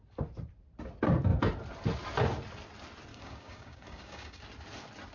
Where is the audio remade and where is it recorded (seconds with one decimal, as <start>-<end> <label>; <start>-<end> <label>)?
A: 0.0-3.1 recorded; 3.1-4.4 remade; 4.4-5.1 recorded